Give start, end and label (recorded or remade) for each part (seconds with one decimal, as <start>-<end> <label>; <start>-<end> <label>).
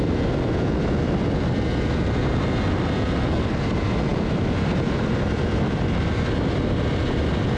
0.0-4.1 recorded; 4.1-6.2 remade; 6.2-7.6 recorded